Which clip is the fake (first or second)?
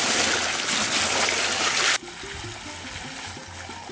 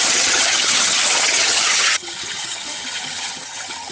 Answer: second